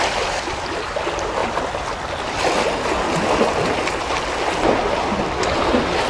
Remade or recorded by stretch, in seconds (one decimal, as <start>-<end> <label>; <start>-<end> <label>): 0.0-6.1 recorded